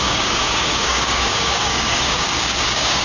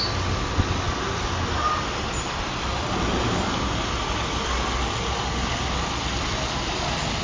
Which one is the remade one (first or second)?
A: first